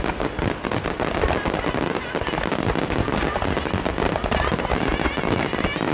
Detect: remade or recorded recorded